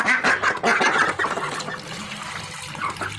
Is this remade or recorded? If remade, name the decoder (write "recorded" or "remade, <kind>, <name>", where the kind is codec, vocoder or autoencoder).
recorded